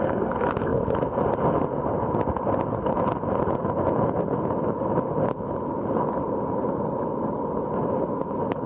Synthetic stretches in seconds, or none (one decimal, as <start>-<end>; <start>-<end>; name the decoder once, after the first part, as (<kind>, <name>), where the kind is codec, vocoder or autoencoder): none